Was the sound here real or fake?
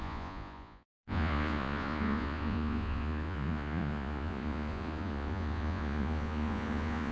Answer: fake